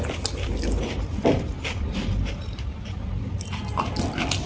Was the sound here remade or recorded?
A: recorded